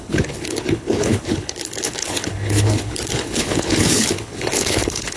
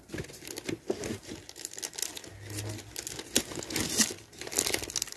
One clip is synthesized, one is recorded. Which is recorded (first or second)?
second